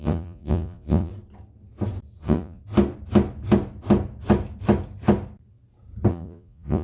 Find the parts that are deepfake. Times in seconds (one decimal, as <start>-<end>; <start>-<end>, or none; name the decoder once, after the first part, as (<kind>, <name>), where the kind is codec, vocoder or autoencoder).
0.0-1.1 (vocoder, Vocos); 2.2-2.6; 6.1-6.8